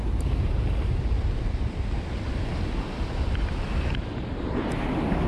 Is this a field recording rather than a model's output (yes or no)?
yes